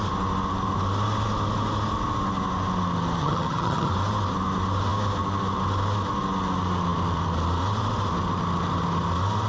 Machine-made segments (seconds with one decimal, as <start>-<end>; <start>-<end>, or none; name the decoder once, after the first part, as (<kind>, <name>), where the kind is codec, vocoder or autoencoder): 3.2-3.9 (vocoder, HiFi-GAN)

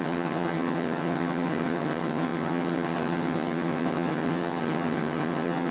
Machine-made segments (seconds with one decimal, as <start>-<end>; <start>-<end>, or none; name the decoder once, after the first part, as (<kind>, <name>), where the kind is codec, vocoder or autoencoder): 0.0-5.7 (vocoder, HiFi-GAN)

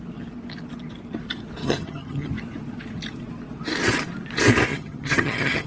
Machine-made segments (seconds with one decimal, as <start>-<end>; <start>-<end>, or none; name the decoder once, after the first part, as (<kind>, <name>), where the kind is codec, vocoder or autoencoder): 1.6-2.3 (vocoder, HiFi-GAN); 4.7-5.7